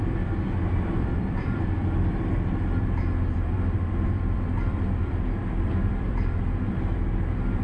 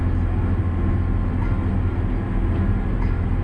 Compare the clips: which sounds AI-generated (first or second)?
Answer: first